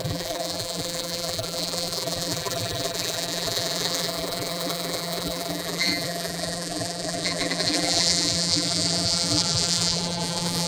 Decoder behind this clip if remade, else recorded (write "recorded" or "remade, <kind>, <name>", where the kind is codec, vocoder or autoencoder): remade, vocoder, BigVGAN v2